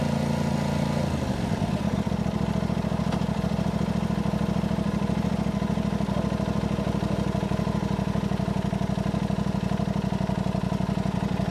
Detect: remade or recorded recorded